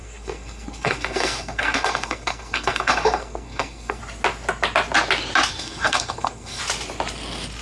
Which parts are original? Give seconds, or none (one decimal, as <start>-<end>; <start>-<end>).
4.0-5.5; 6.6-7.6